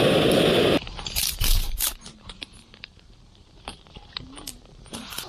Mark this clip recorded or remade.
remade